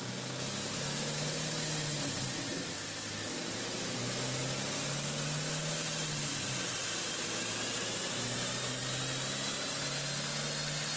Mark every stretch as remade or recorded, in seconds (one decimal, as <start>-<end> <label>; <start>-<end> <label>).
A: 0.0-11.0 recorded